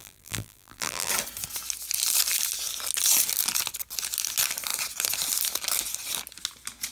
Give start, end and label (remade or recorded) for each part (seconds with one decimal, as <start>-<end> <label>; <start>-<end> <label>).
0.0-1.1 remade; 1.1-6.9 recorded